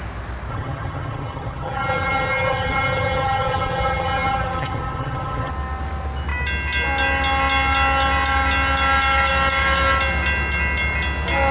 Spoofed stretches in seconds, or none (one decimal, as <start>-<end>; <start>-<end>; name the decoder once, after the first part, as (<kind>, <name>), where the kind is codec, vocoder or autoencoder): 0.5-5.5 (vocoder, HiFi-GAN)